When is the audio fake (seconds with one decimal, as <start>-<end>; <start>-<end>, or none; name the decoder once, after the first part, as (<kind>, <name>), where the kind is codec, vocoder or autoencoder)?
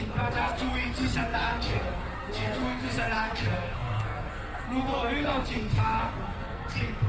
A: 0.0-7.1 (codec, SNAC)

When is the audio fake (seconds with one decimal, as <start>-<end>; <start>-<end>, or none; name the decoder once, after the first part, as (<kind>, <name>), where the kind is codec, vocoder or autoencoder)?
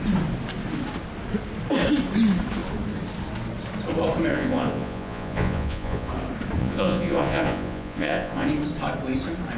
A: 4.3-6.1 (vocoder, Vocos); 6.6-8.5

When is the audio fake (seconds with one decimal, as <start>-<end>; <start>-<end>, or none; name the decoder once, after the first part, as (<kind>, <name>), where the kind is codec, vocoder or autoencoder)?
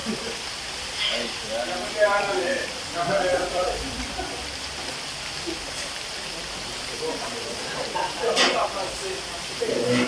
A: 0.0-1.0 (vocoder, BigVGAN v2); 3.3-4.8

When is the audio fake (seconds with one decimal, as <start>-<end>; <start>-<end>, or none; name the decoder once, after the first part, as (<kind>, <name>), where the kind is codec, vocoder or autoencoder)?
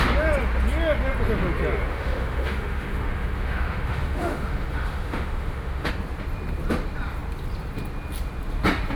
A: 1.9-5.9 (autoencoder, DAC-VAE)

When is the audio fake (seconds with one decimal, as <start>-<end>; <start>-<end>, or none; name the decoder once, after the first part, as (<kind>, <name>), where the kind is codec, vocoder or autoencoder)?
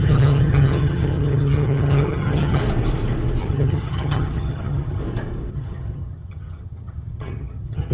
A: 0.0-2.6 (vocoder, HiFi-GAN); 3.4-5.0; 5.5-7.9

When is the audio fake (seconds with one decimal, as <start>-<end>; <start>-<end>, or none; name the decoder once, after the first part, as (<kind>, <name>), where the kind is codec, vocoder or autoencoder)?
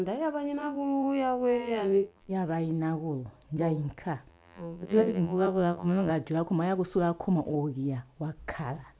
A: 0.6-2.3 (vocoder, BigVGAN v2); 4.3-6.1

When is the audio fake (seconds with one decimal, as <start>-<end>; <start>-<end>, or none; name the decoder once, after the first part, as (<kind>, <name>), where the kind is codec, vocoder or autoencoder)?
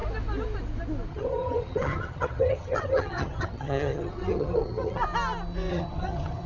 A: 1.1-5.0 (vocoder, HiFi-GAN); 5.7-6.5